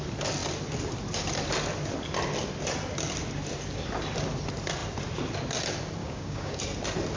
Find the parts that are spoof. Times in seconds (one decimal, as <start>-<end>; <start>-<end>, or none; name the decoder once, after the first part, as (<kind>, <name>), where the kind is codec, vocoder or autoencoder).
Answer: 6.0-6.6 (codec, DAC)